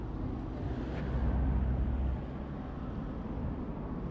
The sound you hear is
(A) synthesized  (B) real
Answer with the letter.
B